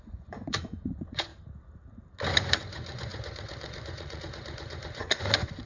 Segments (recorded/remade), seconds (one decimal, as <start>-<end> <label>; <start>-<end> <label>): 0.0-1.3 remade; 1.3-2.3 recorded; 2.3-5.7 remade